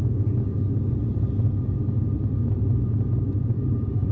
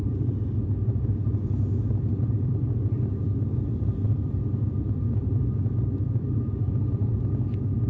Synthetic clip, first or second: second